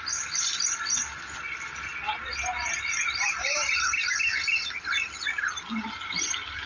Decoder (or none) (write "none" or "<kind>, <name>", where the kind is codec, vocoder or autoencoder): none